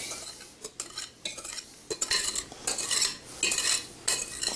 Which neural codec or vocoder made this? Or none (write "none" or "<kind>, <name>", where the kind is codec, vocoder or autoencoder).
none